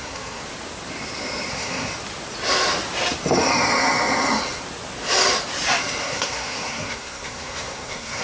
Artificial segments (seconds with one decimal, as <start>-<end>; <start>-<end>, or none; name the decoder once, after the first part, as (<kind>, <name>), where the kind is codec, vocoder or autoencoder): 0.0-0.4 (codec, SNAC); 1.5-1.9; 6.0-8.2